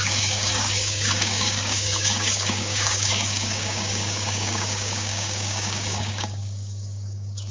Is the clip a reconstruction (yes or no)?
yes